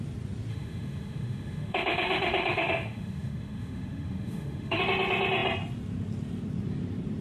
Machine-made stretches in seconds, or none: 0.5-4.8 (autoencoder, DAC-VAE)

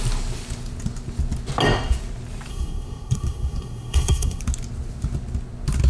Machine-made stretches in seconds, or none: 2.5-4.4 (codec, SNAC)

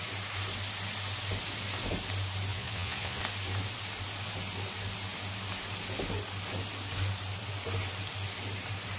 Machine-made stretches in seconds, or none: 2.5-3.2 (vocoder, Vocos)

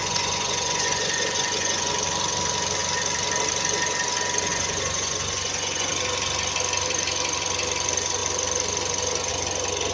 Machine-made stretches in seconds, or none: 0.0-1.9 (vocoder, Vocos); 4.5-5.9

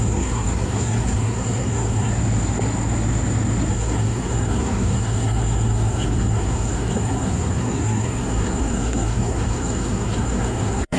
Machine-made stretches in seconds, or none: 0.0-2.1 (codec, SNAC); 3.7-11.0